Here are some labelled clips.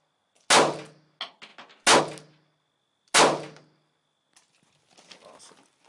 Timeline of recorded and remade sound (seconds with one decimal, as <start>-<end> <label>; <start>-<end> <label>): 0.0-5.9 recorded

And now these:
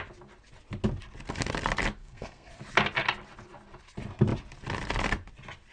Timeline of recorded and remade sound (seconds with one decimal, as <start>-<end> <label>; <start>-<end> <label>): 0.0-2.0 recorded; 2.0-2.5 remade; 2.5-5.7 recorded

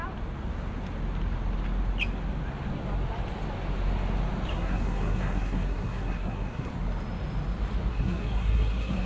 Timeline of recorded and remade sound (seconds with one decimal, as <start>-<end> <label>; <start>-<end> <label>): 0.0-4.5 recorded; 4.5-6.7 remade; 6.7-7.9 recorded; 7.9-9.1 remade

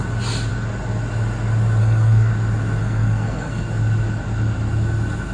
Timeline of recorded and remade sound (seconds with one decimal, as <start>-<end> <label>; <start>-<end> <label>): 0.0-1.8 recorded; 1.8-2.3 remade; 2.3-2.8 recorded; 2.8-3.7 remade; 3.7-5.3 recorded